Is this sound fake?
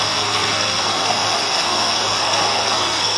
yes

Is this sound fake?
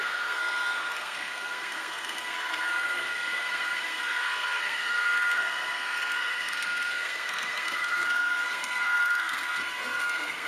yes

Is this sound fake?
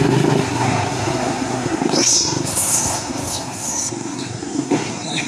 yes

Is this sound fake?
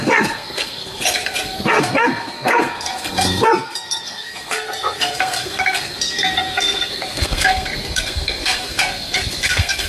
yes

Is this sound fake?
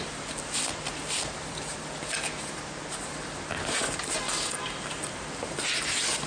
no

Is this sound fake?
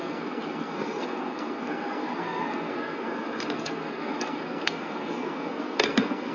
yes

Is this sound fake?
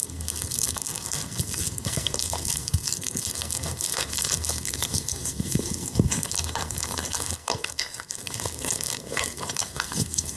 yes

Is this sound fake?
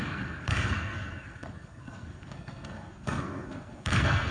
yes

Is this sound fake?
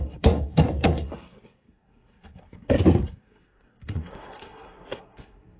yes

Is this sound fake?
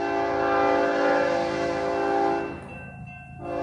no